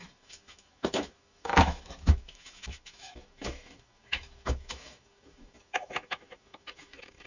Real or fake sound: fake